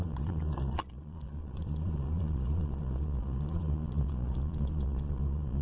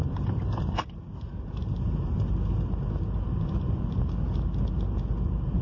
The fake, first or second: first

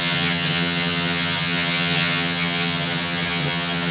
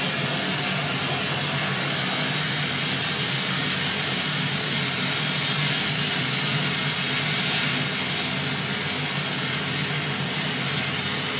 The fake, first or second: first